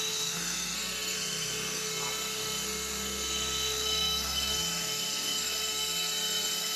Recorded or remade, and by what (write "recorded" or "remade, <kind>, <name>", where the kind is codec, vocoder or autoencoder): remade, codec, SNAC